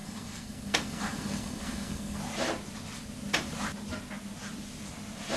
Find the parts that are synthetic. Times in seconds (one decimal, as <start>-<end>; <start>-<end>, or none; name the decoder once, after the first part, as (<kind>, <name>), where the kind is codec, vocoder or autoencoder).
0.0-2.2 (codec, SNAC)